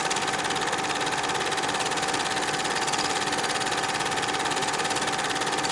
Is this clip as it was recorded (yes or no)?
yes